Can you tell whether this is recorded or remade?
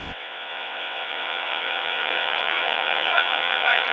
remade